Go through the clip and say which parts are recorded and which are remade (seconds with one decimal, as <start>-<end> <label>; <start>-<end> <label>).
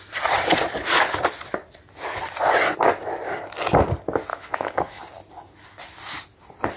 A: 0.0-4.3 recorded; 4.3-5.0 remade; 5.0-6.8 recorded